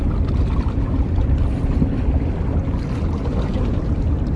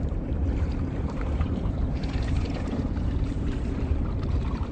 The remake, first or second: second